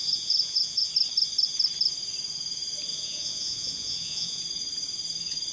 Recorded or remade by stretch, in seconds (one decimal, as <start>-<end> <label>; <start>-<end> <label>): 0.0-0.9 remade; 0.9-2.9 recorded; 2.9-4.4 remade; 4.4-5.5 recorded